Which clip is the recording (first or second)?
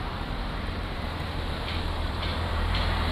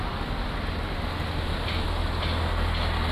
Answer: second